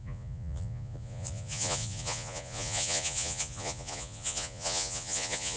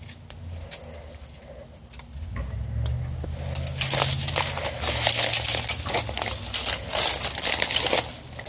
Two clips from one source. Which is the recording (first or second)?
second